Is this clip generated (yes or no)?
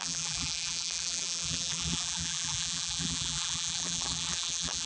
yes